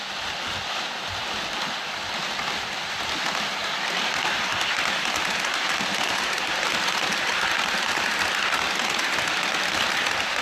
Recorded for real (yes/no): no